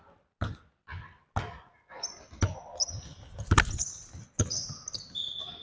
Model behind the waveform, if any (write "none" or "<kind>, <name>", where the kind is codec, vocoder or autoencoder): none